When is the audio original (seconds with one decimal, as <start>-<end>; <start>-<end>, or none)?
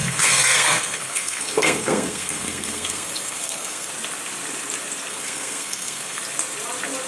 3.9-5.1; 6.2-7.1